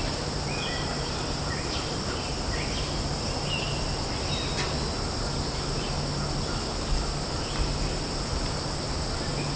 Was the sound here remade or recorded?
recorded